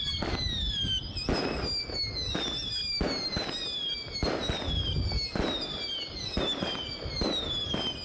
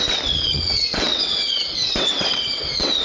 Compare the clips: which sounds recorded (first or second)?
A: first